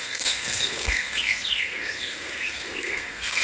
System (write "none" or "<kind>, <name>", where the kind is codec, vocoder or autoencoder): codec, SNAC